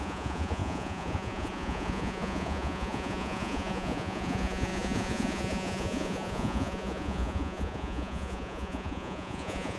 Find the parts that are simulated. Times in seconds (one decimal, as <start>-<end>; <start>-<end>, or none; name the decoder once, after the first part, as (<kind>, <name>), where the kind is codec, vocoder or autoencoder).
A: 0.0-9.8 (vocoder, Vocos)